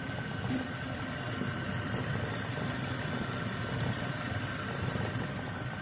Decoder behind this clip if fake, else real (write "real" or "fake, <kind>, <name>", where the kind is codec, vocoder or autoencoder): fake, vocoder, BigVGAN v2